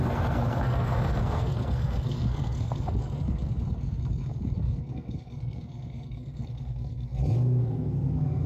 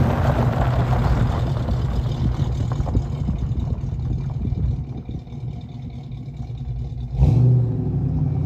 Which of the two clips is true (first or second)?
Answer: second